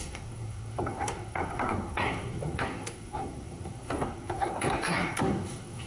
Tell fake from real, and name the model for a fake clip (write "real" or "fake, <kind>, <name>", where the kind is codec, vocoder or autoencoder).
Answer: fake, codec, SNAC